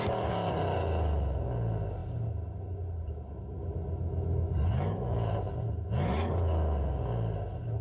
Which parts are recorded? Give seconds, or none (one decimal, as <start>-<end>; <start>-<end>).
0.0-7.8